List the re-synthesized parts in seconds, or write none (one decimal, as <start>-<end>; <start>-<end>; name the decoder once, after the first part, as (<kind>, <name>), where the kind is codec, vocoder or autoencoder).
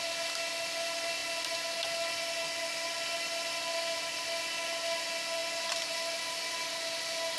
none